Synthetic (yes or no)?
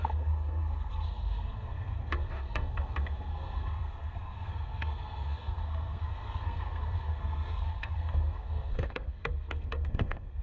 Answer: yes